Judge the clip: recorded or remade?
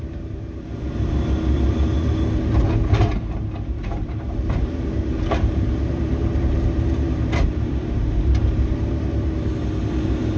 remade